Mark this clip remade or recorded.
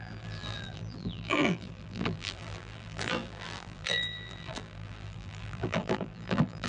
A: remade